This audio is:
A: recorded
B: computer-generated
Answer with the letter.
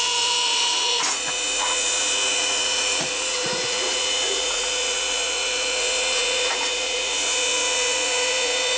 B